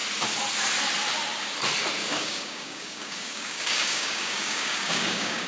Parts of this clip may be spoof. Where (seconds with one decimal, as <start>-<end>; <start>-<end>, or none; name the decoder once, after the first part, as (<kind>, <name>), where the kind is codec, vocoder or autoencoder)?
2.0-5.5 (codec, DAC)